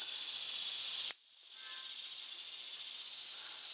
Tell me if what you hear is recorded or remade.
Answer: recorded